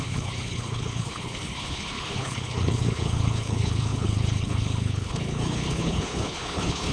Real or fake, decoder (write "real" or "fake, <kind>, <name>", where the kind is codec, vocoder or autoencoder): fake, codec, HILCodec